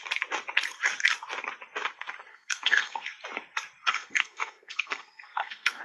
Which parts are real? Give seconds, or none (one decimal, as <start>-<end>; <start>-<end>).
0.0-2.3; 3.1-3.9